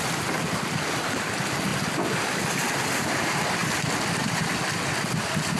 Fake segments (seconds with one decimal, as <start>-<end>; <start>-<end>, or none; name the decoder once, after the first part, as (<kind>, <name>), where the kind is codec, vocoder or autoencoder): none